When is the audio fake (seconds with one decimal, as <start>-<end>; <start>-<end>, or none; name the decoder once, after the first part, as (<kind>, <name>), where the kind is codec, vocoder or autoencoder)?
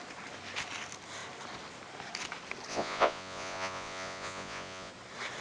2.7-4.9 (vocoder, Vocos)